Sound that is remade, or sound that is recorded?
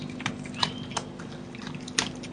remade